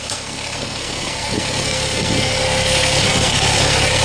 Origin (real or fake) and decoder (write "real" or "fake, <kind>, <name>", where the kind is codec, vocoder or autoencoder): fake, codec, SNAC